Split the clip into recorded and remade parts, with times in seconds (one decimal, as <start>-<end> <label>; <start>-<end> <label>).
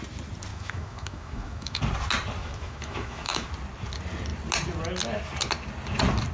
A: 0.0-0.5 recorded; 0.5-1.8 remade; 1.8-2.4 recorded; 2.4-3.5 remade; 3.5-6.3 recorded